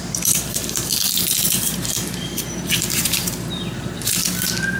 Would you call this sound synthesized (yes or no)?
yes